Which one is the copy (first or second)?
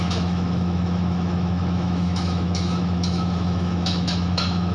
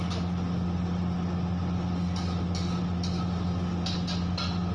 first